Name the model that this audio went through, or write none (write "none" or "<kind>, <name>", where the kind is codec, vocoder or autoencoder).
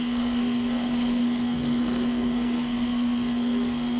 codec, SNAC